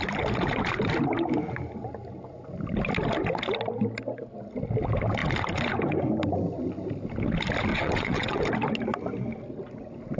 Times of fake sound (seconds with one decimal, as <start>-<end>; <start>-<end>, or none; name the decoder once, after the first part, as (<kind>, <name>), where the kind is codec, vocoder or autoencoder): 7.7-8.4 (vocoder, WaveNeXt)